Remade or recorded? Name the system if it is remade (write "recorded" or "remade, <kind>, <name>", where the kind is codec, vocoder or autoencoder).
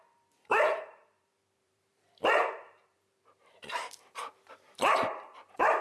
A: remade, vocoder, BigVGAN v2